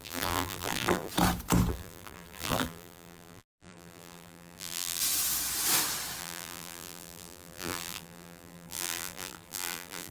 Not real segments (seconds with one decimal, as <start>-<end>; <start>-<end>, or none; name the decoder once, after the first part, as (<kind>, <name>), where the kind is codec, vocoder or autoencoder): 0.0-1.1 (vocoder, BigVGAN v2); 1.7-5.0; 6.2-10.1